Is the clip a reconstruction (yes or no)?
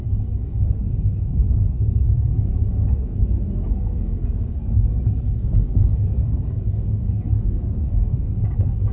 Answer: yes